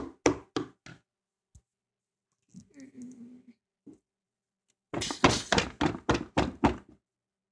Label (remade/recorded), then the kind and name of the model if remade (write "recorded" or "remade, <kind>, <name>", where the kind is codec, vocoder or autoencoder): recorded